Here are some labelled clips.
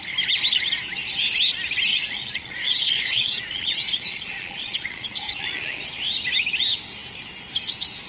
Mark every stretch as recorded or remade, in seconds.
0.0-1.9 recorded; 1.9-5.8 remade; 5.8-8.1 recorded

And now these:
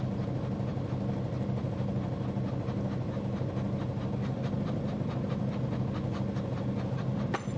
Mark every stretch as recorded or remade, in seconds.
0.0-7.6 recorded

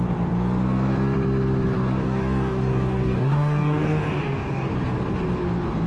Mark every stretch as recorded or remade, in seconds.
0.0-2.0 recorded; 2.0-4.7 remade; 4.7-5.9 recorded

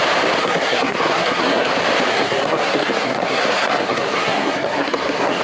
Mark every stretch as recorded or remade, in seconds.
0.0-0.4 recorded; 0.4-1.7 remade; 1.7-2.1 recorded; 2.1-5.4 remade

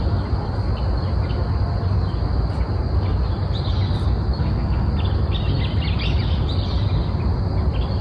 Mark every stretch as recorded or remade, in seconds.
0.0-4.4 recorded; 4.4-4.9 remade; 4.9-8.0 recorded